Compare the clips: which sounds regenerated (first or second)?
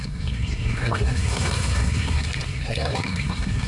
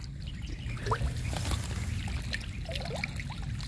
first